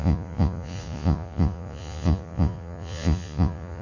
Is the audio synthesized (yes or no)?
yes